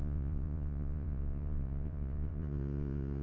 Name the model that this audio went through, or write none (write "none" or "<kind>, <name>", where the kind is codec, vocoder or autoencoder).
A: vocoder, Vocos